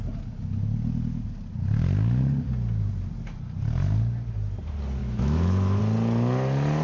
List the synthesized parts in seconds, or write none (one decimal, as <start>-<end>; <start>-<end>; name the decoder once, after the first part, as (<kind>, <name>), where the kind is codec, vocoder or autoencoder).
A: 5.0-5.8 (autoencoder, DAC-VAE)